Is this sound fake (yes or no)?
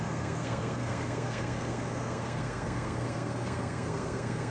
yes